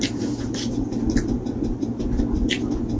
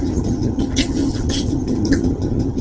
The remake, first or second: second